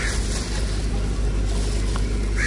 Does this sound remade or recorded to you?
recorded